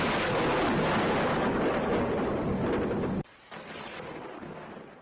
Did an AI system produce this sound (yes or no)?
no